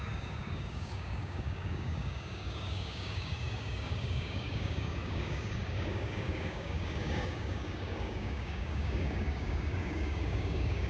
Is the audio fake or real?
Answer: fake